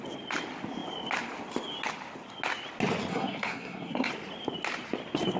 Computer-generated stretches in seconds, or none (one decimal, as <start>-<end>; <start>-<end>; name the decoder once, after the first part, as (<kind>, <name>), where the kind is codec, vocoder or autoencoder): 3.1-4.1 (codec, SNAC)